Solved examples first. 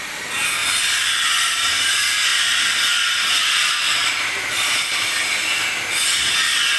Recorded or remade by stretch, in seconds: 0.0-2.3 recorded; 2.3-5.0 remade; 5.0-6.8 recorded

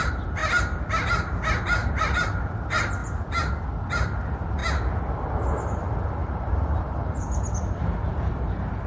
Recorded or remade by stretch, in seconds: 0.0-0.4 remade; 0.4-1.9 recorded; 1.9-3.0 remade; 3.0-3.9 recorded; 3.9-4.6 remade; 4.6-5.7 recorded; 5.7-8.9 remade

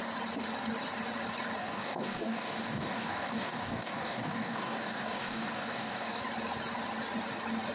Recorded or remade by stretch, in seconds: 0.0-1.6 recorded; 1.6-6.2 remade; 6.2-7.7 recorded

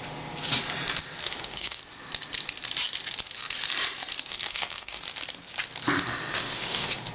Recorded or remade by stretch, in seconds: 0.0-1.2 recorded; 1.2-1.8 remade; 1.8-4.3 recorded; 4.3-5.0 remade; 5.0-6.3 recorded; 6.3-7.1 remade

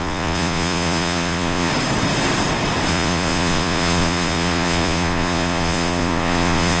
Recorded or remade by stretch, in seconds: 0.0-1.7 remade; 1.7-2.9 recorded; 2.9-6.8 remade

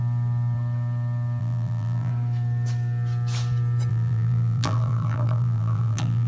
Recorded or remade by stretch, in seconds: 0.0-1.4 recorded; 1.4-2.1 remade; 2.1-3.9 recorded; 3.9-6.3 remade

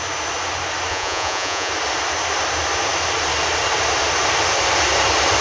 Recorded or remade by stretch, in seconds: 0.0-0.9 recorded; 0.9-1.7 remade; 1.7-5.4 recorded

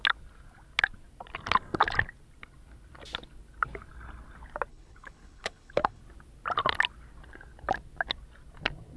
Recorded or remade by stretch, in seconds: 0.0-4.7 recorded; 4.7-6.0 remade; 6.0-9.0 recorded